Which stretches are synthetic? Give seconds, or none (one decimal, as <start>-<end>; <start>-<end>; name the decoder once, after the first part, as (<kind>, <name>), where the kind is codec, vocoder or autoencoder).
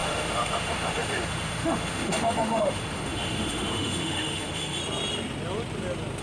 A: 0.0-4.8 (autoencoder, DAC-VAE)